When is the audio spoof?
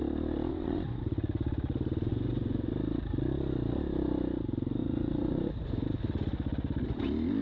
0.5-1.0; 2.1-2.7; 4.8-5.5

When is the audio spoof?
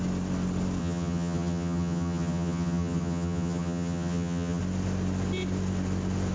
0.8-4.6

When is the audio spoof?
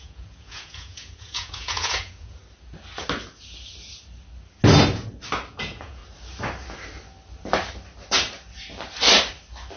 0.0-2.4; 5.5-6.0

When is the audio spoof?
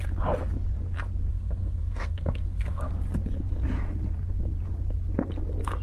1.3-2.9